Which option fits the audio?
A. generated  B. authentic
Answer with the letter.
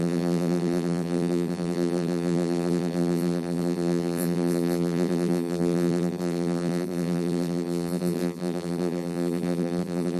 A